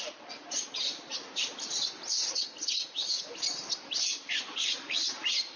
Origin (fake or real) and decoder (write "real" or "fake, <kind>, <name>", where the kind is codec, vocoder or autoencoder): real